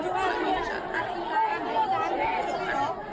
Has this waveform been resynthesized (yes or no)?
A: no